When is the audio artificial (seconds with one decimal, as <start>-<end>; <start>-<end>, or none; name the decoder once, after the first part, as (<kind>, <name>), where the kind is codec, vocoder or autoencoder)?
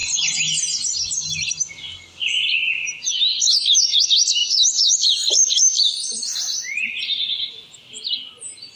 4.4-8.8 (vocoder, BigVGAN v2)